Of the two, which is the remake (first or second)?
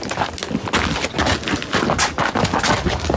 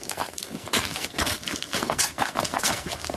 second